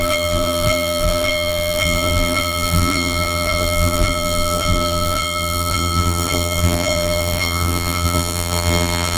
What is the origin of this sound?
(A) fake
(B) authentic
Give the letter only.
A